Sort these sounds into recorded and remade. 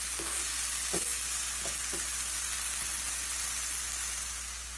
recorded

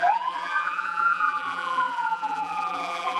remade